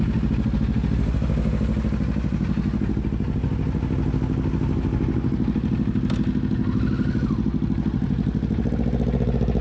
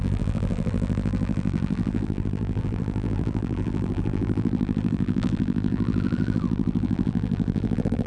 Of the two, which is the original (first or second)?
first